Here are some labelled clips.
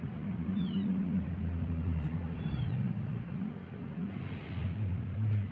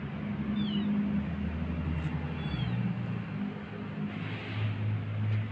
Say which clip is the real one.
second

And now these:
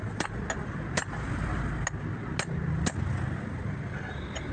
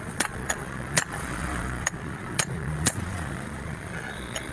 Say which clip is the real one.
first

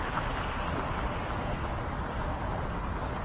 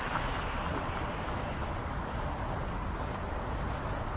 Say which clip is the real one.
first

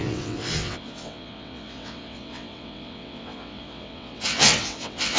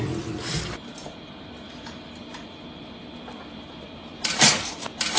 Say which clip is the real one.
second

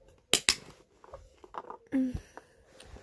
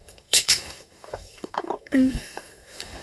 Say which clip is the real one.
first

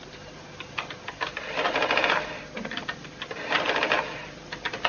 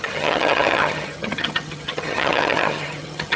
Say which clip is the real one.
first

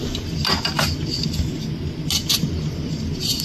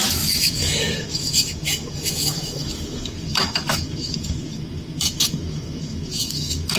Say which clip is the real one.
first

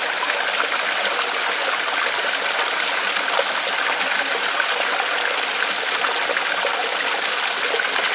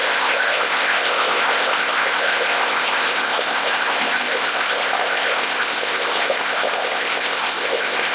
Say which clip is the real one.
first